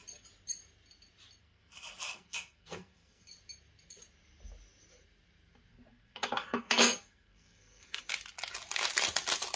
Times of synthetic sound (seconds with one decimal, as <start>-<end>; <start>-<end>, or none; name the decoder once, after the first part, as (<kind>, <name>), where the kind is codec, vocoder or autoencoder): 1.4-3.3 (codec, SNAC); 5.7-8.0